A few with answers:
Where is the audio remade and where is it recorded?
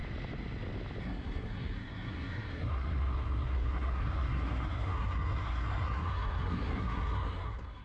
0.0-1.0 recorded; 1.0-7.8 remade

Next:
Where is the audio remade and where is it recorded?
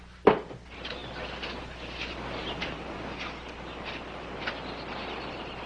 0.0-5.7 recorded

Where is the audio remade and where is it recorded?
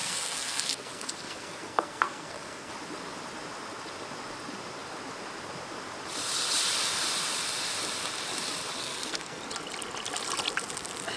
0.0-2.7 remade; 2.7-8.8 recorded; 8.8-9.4 remade; 9.4-11.2 recorded